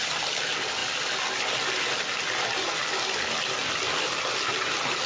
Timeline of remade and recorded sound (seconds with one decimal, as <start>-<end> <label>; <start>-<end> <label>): 0.0-5.1 recorded